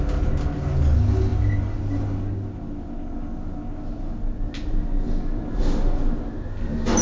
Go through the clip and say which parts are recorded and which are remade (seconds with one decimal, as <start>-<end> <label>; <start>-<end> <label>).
0.0-7.0 recorded